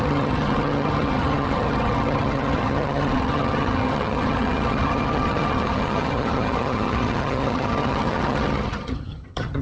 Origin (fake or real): fake